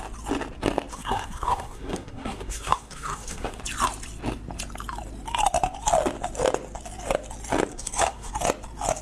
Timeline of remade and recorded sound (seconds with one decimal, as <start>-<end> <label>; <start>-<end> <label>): 0.0-0.9 recorded; 0.9-3.6 remade; 3.6-7.7 recorded; 7.7-8.3 remade; 8.3-9.0 recorded